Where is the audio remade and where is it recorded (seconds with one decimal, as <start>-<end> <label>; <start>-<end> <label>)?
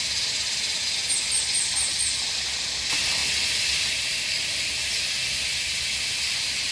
0.0-6.7 recorded